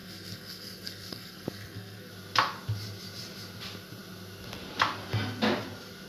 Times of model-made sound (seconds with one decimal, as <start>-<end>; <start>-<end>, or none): 0.0-2.1